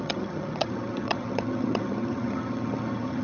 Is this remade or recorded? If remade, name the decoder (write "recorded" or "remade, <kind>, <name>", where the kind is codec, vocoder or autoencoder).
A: remade, vocoder, HiFi-GAN